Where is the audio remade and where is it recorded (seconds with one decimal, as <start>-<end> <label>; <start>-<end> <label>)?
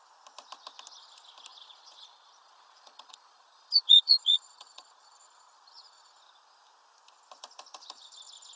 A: 0.0-1.5 recorded; 1.5-6.2 remade; 6.2-8.6 recorded